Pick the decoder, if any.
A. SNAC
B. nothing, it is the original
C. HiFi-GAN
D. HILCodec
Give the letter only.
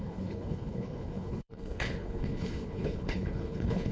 D